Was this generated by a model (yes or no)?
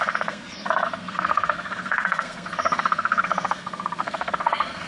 yes